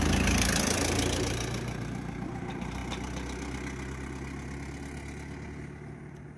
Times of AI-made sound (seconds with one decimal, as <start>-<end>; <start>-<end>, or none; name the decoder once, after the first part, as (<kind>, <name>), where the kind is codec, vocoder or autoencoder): 0.0-2.8 (vocoder, BigVGAN v2)